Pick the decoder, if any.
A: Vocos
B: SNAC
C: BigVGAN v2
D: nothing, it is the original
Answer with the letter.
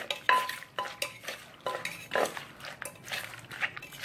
D